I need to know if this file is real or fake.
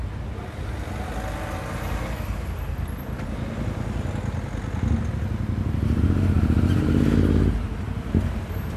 real